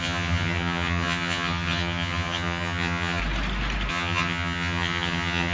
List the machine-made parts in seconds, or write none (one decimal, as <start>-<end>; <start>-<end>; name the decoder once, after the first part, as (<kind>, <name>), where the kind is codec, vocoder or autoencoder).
0.0-3.2 (vocoder, HiFi-GAN); 3.9-5.5